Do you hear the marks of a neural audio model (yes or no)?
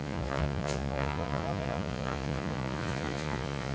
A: yes